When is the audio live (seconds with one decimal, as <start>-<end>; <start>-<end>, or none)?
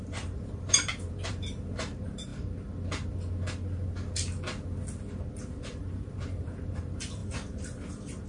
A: 2.3-5.6